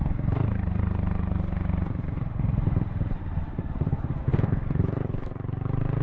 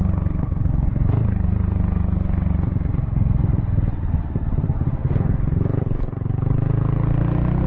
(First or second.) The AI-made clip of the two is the first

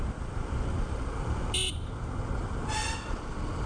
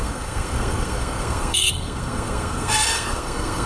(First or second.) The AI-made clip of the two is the second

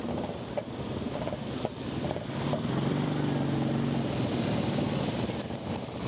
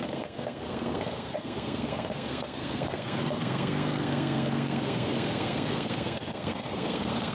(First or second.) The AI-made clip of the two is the second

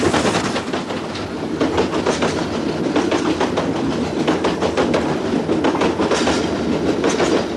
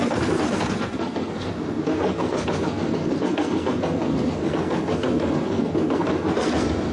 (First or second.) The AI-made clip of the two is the second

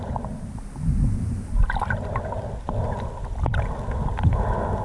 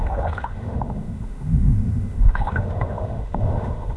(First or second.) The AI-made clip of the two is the second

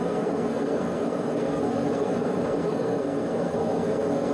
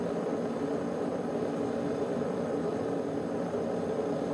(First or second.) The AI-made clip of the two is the first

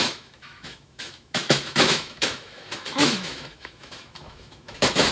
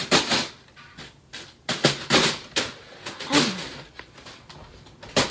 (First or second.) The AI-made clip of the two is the first